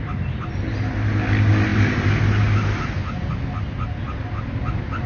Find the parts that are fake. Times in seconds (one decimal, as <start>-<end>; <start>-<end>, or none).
none